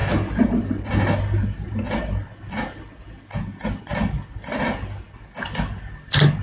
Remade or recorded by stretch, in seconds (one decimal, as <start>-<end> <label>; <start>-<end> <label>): 0.0-6.4 recorded